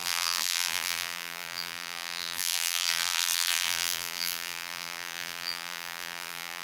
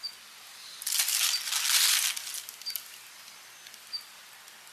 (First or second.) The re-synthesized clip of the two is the first